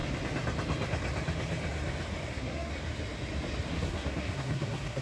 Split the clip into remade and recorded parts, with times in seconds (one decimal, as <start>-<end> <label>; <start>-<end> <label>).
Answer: 0.0-2.3 recorded; 2.3-2.7 remade; 2.7-3.7 recorded; 3.7-5.0 remade